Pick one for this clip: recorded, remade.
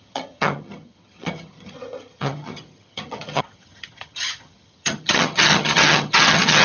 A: remade